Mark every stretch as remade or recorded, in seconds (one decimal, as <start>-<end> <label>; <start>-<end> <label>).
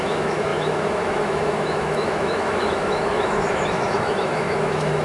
0.0-5.0 remade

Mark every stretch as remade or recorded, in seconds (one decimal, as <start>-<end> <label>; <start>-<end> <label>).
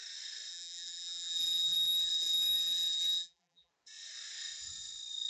0.0-0.5 recorded; 0.5-3.7 remade; 3.7-5.3 recorded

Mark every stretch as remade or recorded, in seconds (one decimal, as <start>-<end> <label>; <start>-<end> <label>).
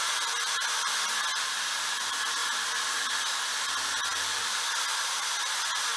0.0-6.0 recorded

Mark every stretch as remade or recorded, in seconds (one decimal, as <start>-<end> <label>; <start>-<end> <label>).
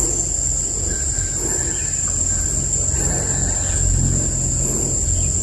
0.0-5.4 recorded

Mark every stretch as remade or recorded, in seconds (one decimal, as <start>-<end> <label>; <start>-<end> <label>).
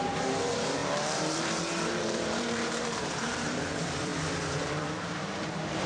0.0-4.1 remade; 4.1-4.7 recorded; 4.7-5.9 remade